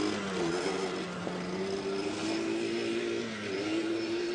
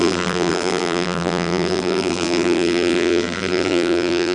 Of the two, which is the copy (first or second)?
second